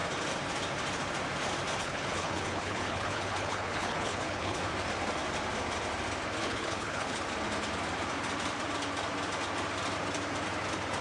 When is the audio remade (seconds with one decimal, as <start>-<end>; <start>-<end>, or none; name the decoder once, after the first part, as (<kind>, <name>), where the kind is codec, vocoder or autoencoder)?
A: 1.8-4.6 (codec, HILCodec); 6.4-7.2